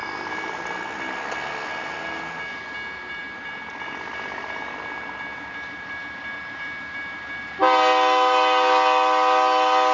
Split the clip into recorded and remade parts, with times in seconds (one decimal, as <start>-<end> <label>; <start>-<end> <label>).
0.0-1.2 remade; 1.2-3.2 recorded; 3.2-4.1 remade; 4.1-9.9 recorded